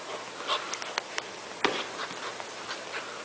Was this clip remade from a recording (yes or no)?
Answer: no